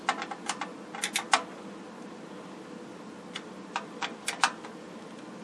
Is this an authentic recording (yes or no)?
yes